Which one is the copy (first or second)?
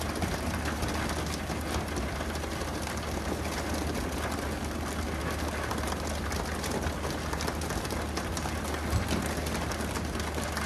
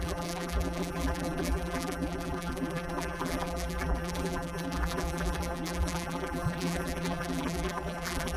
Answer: second